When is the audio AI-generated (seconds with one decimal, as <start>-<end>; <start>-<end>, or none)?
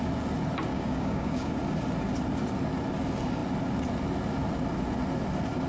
0.7-1.5